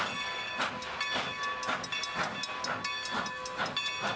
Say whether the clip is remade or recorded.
recorded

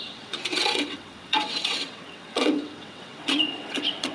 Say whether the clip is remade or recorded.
remade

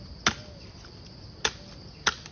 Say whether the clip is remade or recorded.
recorded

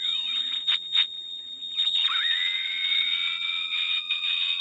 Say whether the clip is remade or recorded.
remade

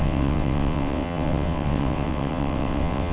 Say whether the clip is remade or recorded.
remade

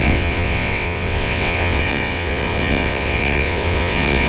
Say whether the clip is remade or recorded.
remade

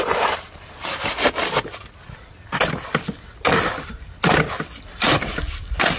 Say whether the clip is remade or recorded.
recorded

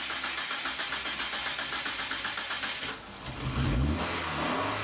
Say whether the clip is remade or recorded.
recorded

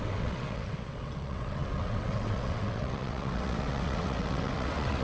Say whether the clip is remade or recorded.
remade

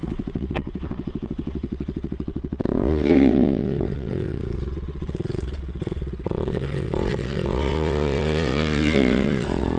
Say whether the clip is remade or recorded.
remade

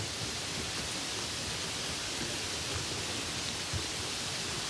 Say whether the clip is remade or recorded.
recorded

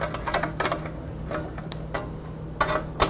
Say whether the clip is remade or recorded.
recorded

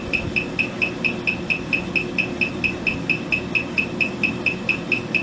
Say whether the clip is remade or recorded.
recorded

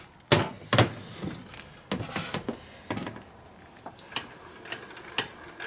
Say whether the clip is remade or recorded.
recorded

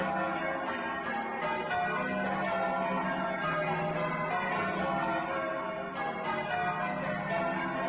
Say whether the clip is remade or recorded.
recorded